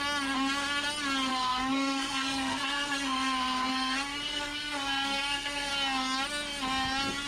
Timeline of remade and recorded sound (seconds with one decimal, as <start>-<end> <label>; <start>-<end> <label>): 0.0-1.3 recorded; 1.3-5.7 remade; 5.7-7.3 recorded